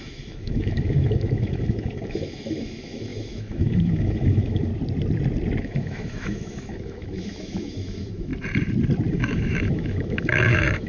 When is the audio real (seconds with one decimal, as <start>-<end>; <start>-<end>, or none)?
4.7-5.6; 8.3-9.1